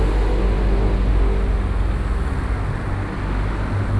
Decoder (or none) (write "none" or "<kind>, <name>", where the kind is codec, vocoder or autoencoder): none